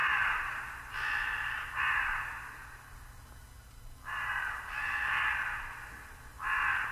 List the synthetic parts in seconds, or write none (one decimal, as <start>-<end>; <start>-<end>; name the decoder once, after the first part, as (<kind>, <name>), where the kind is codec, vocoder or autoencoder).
0.0-1.7 (vocoder, BigVGAN v2)